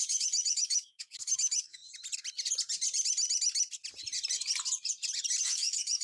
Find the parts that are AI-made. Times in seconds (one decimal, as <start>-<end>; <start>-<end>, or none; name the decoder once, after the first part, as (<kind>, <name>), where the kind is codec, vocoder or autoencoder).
0.0-1.8 (autoencoder, DAC-VAE); 5.4-6.0